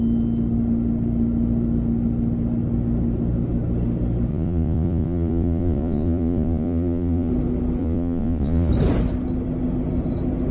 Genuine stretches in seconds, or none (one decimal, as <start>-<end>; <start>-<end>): 0.0-4.3; 7.3-7.8; 8.7-10.5